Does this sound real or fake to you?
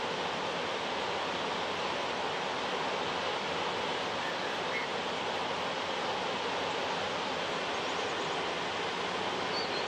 real